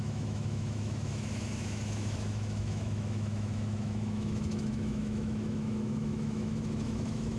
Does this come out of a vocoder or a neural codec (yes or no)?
yes